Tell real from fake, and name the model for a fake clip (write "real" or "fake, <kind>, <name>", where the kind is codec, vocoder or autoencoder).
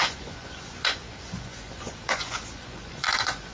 fake, vocoder, Vocos